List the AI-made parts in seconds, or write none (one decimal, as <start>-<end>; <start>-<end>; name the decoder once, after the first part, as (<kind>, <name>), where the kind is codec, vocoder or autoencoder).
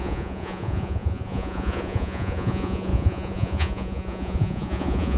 0.0-5.2 (vocoder, Vocos)